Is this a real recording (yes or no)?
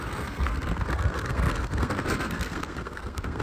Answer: no